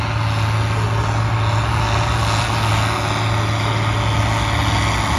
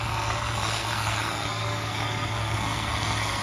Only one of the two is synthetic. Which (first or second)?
second